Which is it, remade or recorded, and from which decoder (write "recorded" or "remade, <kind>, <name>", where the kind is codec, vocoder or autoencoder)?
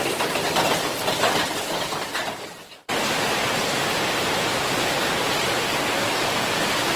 recorded